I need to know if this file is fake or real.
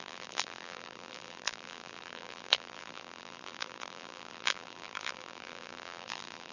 fake